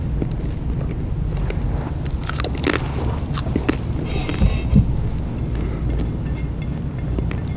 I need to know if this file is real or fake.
real